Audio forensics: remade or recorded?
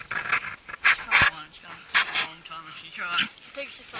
recorded